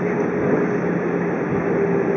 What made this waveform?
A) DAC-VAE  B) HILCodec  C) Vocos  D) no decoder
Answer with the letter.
D